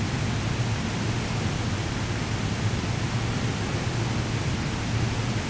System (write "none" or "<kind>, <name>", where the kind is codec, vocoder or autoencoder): none